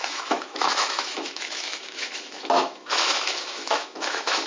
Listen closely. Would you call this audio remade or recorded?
remade